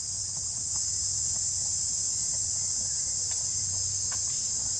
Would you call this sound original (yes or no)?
yes